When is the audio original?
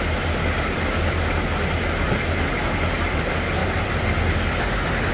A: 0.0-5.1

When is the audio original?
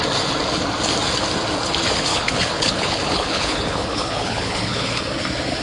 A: 0.0-2.1; 5.0-5.6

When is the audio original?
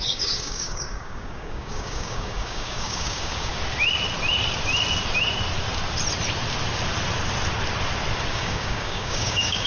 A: 3.5-8.3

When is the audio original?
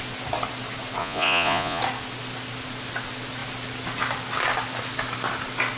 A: 0.0-1.0; 1.8-5.8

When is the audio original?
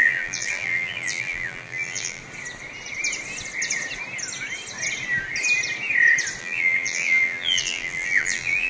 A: 2.2-6.4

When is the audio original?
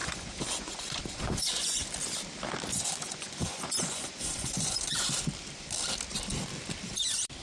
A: 1.9-2.7; 5.3-7.4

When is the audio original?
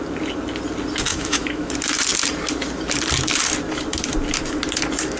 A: 0.0-1.1; 1.7-5.2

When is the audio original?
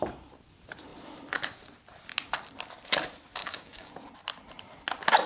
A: 0.0-3.4; 3.9-5.3